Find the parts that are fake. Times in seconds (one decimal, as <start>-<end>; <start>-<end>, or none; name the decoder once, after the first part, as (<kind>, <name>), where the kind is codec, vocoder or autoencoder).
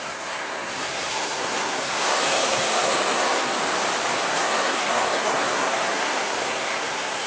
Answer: 0.0-3.6 (codec, SNAC); 4.3-7.3